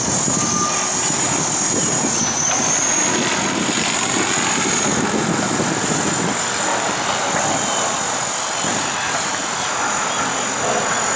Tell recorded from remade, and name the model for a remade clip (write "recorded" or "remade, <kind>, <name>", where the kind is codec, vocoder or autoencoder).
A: recorded